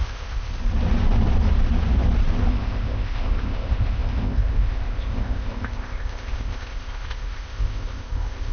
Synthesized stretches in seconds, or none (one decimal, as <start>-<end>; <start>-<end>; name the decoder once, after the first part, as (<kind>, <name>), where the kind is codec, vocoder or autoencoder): 0.0-0.5 (codec, ZipCodec); 2.5-8.5